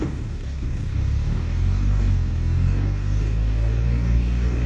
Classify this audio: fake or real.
fake